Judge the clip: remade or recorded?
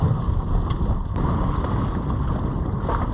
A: recorded